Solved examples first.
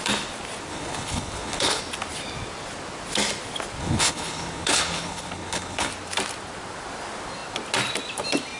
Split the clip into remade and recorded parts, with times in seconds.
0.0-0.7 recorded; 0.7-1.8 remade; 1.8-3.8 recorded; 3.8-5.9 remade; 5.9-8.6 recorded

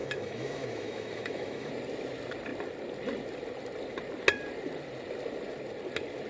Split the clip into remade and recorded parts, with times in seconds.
0.0-1.7 remade; 1.7-6.3 recorded

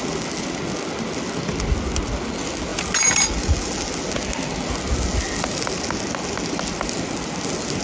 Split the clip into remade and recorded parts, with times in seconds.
0.0-7.8 recorded

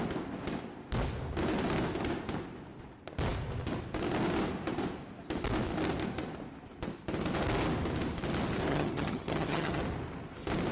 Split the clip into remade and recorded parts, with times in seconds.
0.0-8.7 recorded; 8.7-9.8 remade; 9.8-10.7 recorded